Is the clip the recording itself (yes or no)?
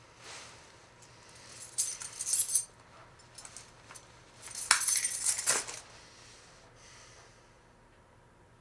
yes